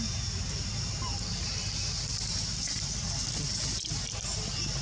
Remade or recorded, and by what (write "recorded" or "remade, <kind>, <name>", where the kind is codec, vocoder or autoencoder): recorded